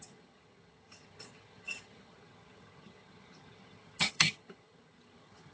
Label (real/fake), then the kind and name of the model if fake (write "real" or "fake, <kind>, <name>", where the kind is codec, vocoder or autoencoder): fake, vocoder, HiFi-GAN